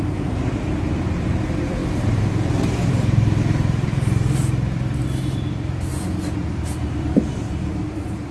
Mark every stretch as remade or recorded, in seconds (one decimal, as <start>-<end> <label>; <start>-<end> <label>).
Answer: 0.0-5.0 remade; 5.0-6.7 recorded; 6.7-8.3 remade